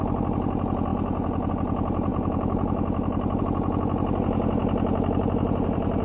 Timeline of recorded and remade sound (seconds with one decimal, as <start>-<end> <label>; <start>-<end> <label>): 0.0-6.0 recorded